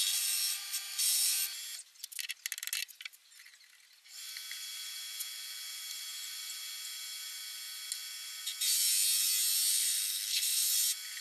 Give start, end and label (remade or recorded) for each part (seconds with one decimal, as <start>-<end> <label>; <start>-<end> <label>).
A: 0.0-9.7 recorded; 9.7-10.7 remade; 10.7-11.2 recorded